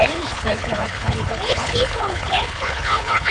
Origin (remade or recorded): remade